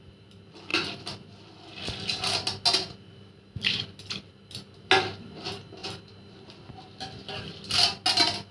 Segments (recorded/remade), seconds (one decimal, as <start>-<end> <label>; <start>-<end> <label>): 0.0-8.5 recorded